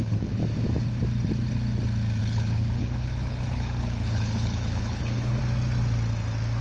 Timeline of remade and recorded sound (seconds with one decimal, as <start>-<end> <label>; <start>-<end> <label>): 0.0-0.4 remade; 0.4-2.2 recorded; 2.2-5.4 remade; 5.4-6.6 recorded